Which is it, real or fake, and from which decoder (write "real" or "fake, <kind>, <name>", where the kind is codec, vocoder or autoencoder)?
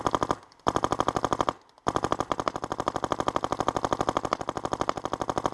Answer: real